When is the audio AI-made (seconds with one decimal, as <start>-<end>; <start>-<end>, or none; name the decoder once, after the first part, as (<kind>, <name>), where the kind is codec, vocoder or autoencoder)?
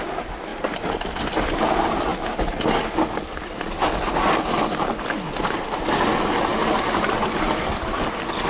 none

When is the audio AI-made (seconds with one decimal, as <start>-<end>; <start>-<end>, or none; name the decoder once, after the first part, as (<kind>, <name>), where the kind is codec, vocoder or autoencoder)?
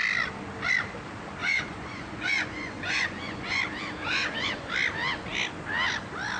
1.4-3.6 (vocoder, Vocos); 4.0-4.7